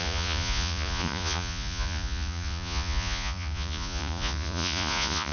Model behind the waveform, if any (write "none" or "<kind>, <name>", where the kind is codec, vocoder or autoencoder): vocoder, Vocos